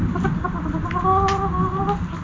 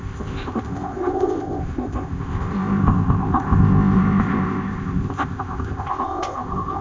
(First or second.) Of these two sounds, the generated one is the second